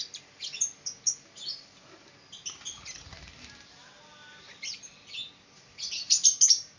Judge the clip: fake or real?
real